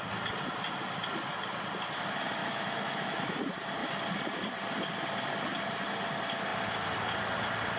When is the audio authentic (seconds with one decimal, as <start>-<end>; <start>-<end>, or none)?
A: 0.0-2.4; 3.4-7.8